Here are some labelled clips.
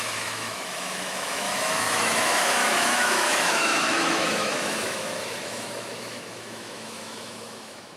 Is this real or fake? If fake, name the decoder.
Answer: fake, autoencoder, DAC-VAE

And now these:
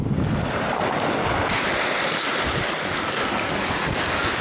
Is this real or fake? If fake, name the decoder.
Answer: real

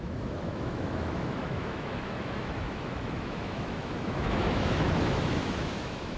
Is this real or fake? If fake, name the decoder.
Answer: fake, autoencoder, DAC-VAE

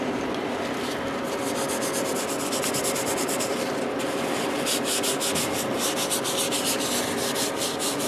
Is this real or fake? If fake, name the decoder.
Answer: real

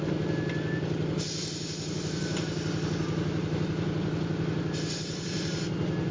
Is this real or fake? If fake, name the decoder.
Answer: real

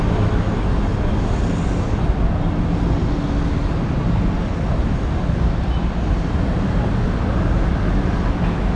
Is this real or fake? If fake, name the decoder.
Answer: real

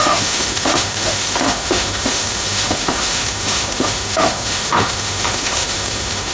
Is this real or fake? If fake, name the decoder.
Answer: fake, autoencoder, DAC-VAE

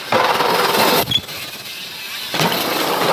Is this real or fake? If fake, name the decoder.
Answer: real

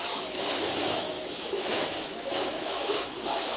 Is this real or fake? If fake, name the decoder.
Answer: fake, autoencoder, DAC-VAE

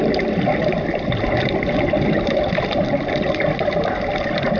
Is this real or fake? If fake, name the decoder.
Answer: real